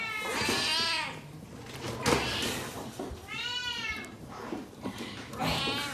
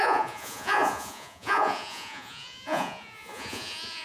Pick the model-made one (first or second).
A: second